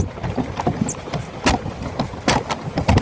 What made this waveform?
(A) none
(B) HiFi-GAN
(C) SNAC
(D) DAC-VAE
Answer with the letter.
A